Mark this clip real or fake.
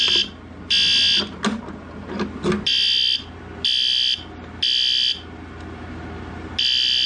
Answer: real